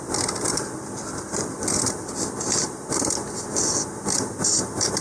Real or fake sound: fake